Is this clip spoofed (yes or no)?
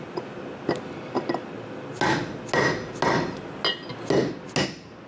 no